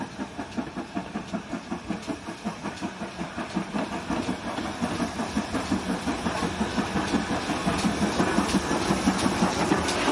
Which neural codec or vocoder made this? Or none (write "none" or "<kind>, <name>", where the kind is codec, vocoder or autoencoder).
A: vocoder, BigVGAN v2